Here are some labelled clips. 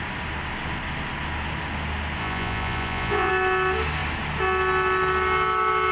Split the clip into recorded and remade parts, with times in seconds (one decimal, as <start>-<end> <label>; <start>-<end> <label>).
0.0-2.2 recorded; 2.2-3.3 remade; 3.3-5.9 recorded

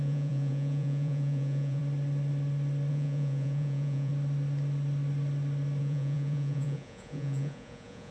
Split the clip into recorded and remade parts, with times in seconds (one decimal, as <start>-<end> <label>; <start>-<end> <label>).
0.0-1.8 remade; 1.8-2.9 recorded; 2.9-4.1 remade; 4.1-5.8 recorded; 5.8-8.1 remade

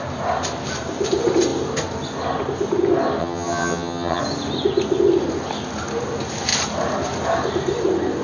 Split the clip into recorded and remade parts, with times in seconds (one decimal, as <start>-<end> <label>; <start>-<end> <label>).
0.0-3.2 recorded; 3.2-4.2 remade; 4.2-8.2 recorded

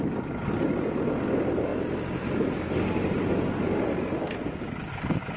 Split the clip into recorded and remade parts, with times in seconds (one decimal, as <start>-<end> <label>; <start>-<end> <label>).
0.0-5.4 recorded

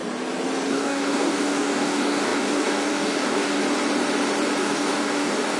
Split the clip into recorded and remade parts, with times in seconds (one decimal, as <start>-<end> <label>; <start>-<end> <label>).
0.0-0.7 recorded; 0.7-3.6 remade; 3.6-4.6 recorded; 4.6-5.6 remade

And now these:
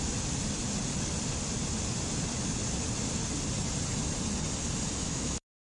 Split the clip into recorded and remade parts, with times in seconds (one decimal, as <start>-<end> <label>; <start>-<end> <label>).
0.0-5.0 recorded; 5.0-5.7 remade